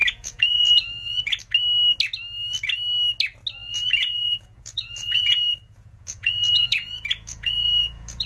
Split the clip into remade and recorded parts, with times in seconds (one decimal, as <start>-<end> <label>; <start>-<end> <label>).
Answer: 0.0-1.4 remade; 1.4-3.6 recorded; 3.6-8.3 remade